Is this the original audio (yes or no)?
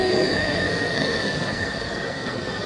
no